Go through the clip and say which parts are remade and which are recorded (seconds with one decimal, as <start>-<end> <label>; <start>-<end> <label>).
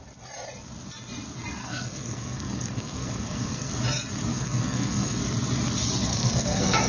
0.0-1.6 recorded; 1.6-3.7 remade; 3.7-4.3 recorded; 4.3-5.2 remade; 5.2-6.1 recorded; 6.1-6.9 remade